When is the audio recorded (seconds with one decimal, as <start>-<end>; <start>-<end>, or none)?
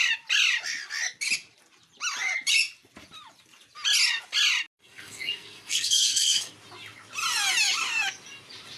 0.0-4.8; 6.5-8.8